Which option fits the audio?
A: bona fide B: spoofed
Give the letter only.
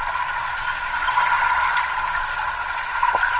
A